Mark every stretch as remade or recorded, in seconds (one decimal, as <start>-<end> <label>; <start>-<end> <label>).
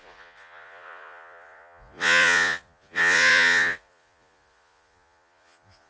0.0-5.9 remade